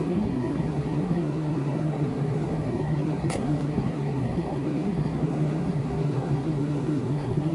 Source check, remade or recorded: remade